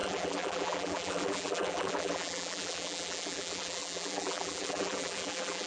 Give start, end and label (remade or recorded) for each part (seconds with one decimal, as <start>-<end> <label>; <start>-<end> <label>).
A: 0.0-5.7 remade